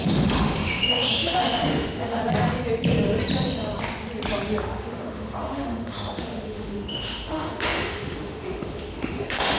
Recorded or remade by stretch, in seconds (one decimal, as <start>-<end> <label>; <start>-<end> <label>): 0.0-2.2 remade; 2.2-4.8 recorded; 4.8-9.6 remade